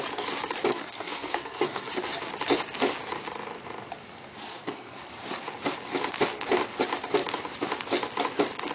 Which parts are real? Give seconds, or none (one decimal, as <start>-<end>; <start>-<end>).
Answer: 0.0-0.7; 1.9-4.5; 5.0-8.7